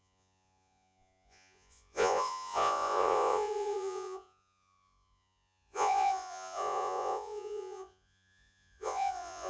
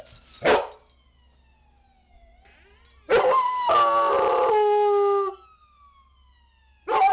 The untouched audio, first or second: second